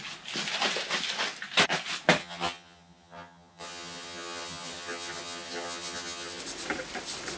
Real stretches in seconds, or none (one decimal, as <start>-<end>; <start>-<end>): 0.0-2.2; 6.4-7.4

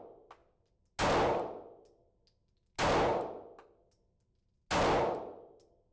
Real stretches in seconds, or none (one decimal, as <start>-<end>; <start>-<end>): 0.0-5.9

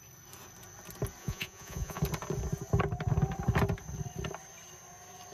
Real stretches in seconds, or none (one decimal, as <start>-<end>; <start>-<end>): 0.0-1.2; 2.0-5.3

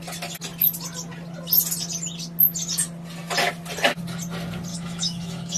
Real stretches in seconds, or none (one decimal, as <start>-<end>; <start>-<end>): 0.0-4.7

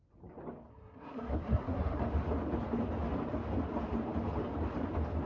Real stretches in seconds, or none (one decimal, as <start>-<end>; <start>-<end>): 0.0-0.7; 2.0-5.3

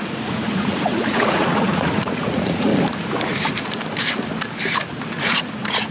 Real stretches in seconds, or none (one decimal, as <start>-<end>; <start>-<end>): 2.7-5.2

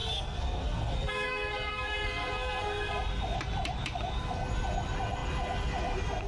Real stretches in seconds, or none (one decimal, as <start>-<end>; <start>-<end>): 2.9-6.3